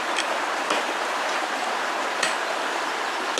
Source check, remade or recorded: recorded